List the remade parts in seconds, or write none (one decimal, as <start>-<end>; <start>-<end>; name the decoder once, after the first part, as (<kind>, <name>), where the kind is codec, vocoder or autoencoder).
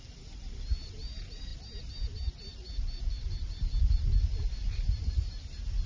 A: none